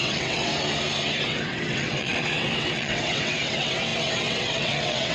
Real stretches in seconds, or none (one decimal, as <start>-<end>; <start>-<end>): 0.5-1.2